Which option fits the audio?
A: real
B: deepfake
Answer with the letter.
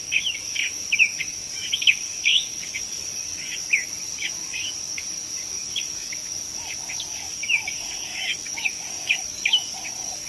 B